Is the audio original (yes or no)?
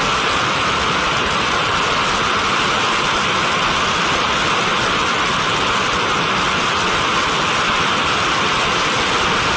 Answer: yes